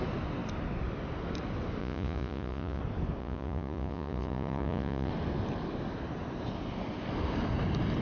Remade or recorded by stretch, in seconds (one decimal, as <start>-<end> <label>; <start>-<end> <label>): 0.0-1.8 recorded; 1.8-2.8 remade; 2.8-3.2 recorded; 3.2-5.1 remade; 5.1-8.0 recorded